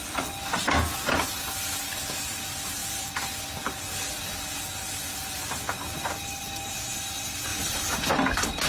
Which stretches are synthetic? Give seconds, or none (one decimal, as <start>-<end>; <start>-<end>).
none